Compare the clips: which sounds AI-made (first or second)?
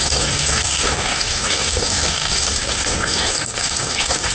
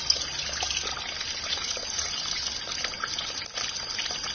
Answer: first